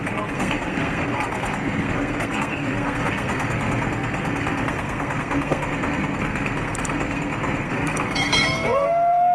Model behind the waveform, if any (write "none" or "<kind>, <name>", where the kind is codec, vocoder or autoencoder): codec, SNAC